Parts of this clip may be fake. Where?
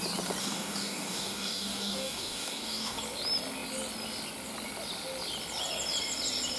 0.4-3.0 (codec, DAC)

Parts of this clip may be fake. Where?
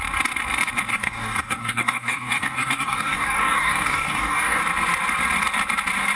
0.9-4.6 (codec, DAC)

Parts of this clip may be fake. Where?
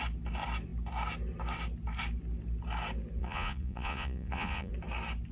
3.2-4.7 (vocoder, Vocos)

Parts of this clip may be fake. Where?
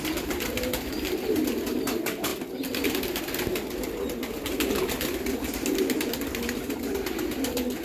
none